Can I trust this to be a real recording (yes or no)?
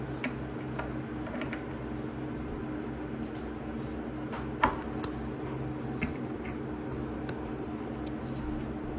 yes